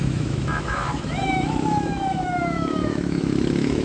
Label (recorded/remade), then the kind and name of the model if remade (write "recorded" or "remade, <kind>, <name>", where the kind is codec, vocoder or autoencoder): remade, autoencoder, DAC-VAE